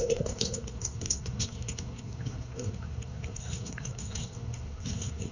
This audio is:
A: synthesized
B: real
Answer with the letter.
A